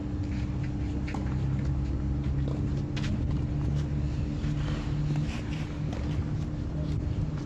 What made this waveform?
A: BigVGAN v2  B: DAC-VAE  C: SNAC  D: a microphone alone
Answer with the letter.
D